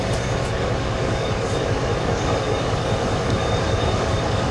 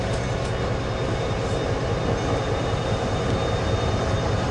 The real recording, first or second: second